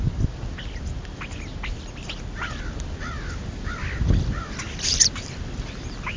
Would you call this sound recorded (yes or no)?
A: yes